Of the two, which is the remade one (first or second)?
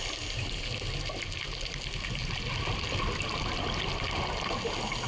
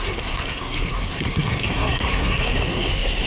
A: second